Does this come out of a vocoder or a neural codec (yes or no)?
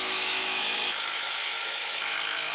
yes